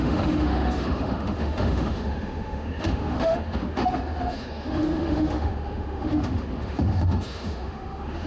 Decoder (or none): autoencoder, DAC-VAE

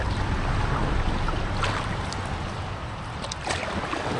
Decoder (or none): none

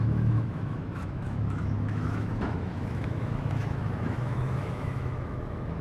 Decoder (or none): autoencoder, DAC-VAE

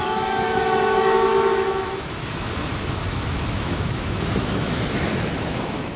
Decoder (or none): autoencoder, DAC-VAE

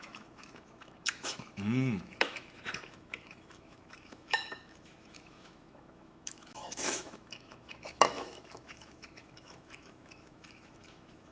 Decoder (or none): autoencoder, DAC-VAE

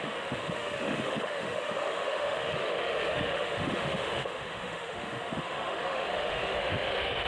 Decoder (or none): autoencoder, DAC-VAE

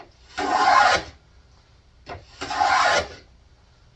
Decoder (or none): none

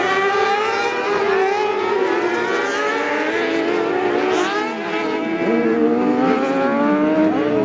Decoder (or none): none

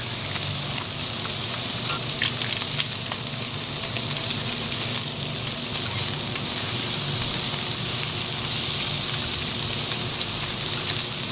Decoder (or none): none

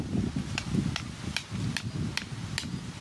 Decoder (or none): none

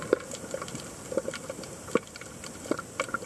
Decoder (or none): none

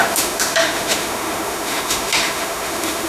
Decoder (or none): autoencoder, DAC-VAE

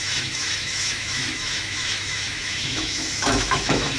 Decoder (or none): autoencoder, DAC-VAE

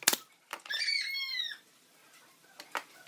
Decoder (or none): none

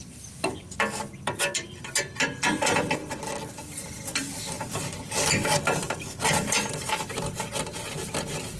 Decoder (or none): none